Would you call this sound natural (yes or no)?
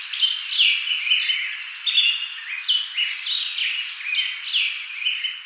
yes